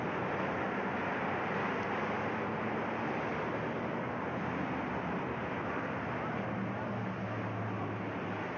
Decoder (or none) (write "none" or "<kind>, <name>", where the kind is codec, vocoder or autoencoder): none